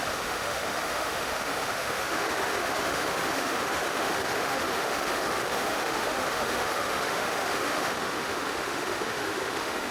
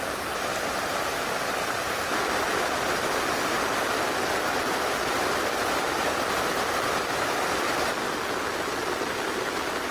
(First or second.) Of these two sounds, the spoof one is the first